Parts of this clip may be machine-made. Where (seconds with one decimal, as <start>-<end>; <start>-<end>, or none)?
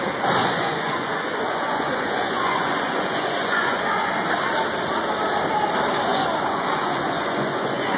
0.4-4.1; 6.1-8.0